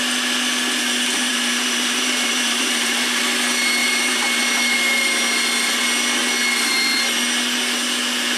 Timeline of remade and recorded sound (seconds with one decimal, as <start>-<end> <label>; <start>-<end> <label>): 0.0-1.3 recorded; 1.3-3.2 remade; 3.2-3.8 recorded; 3.8-4.4 remade; 4.4-8.4 recorded